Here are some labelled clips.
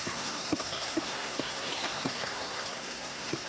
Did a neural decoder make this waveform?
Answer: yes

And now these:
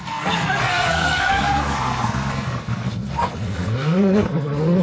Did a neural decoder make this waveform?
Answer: yes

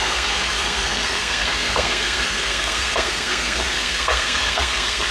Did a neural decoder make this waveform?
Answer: yes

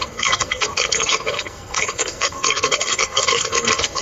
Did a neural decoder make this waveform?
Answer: yes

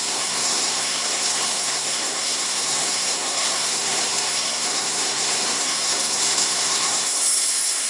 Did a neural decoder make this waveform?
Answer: yes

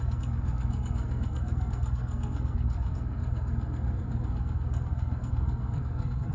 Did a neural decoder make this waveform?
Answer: yes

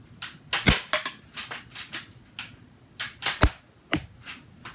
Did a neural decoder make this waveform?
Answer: no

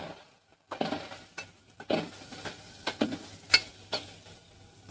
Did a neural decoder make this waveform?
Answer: no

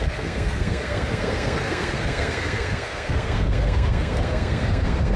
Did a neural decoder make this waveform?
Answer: yes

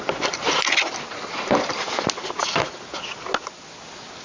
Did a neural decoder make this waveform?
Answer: no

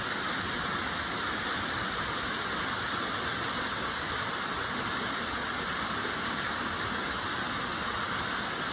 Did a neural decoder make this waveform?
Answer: no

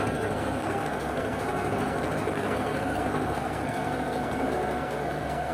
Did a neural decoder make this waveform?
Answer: yes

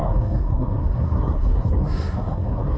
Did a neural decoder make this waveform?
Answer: yes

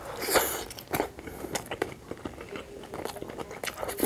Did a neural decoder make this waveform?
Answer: no